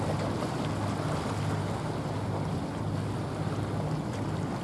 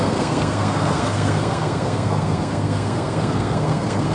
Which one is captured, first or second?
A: first